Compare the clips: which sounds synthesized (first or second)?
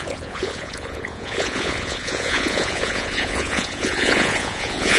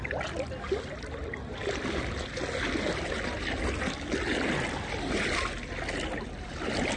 first